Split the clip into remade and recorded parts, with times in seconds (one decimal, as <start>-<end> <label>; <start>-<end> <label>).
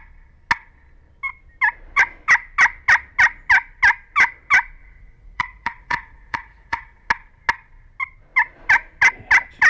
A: 0.0-4.8 recorded; 4.8-7.1 remade; 7.1-9.7 recorded